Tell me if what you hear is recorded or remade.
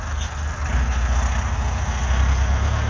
recorded